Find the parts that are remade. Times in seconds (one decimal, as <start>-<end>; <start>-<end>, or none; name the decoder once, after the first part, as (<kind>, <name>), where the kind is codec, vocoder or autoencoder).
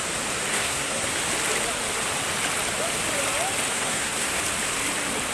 0.5-1.1 (codec, SNAC); 3.7-4.4